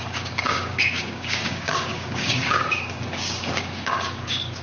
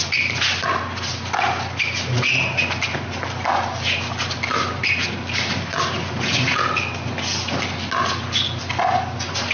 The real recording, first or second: second